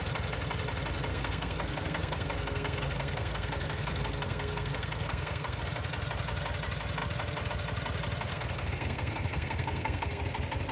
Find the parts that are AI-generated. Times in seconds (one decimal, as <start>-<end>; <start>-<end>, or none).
1.1-5.6; 8.3-10.2